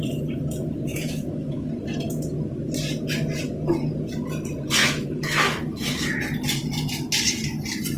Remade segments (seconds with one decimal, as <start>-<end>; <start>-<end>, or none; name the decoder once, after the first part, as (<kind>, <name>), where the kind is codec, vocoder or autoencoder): 0.9-1.7 (autoencoder, DAC-VAE); 4.8-6.2